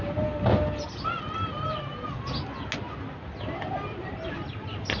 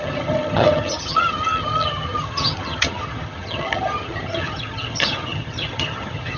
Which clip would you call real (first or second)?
first